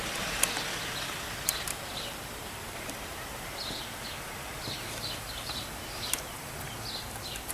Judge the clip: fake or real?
fake